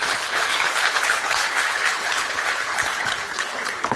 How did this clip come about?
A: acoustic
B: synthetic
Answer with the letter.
B